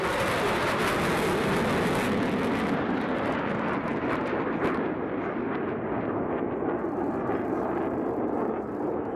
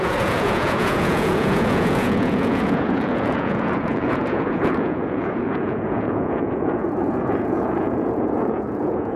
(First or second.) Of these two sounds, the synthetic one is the second